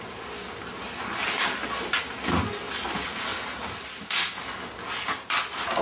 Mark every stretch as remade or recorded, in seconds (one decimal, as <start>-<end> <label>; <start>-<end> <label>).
0.0-5.8 recorded